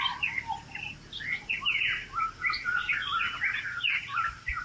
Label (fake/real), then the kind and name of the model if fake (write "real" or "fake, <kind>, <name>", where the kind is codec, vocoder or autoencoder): real